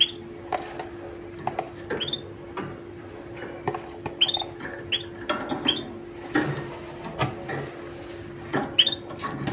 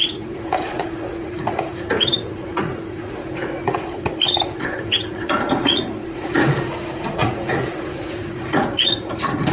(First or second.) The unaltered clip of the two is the first